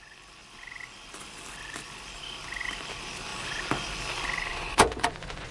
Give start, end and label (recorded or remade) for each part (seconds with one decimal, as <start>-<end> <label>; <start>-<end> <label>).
0.0-4.5 recorded; 4.5-5.5 remade